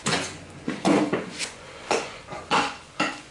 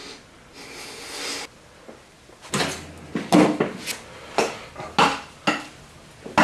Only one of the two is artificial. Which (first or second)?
first